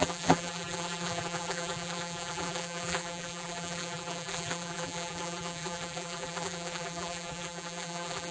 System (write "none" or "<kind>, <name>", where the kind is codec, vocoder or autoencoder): vocoder, BigVGAN v2